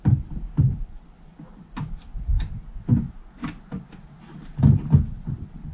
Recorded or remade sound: recorded